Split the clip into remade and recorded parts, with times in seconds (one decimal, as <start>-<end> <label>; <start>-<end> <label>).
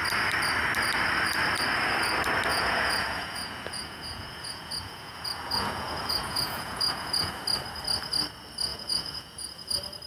0.0-2.5 recorded; 2.5-7.4 remade; 7.4-8.7 recorded; 8.7-9.7 remade; 9.7-10.1 recorded